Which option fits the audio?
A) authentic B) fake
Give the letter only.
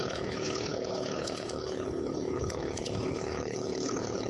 B